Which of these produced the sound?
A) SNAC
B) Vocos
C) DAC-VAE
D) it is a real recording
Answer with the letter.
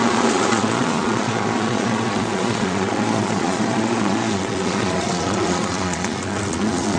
B